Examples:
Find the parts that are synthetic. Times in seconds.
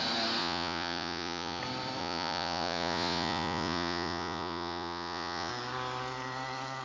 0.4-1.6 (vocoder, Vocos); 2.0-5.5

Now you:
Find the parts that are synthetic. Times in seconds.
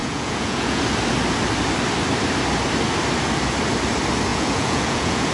0.0-0.8 (vocoder, Vocos); 4.3-5.3